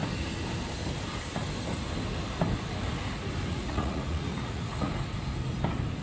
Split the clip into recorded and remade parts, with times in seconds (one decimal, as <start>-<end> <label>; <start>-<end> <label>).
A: 0.0-3.5 recorded; 3.5-4.9 remade; 4.9-6.0 recorded